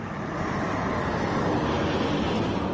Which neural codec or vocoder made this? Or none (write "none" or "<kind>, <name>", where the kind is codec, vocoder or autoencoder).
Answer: none